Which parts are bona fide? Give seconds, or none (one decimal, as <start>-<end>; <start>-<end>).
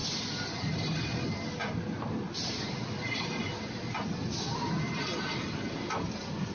0.0-6.5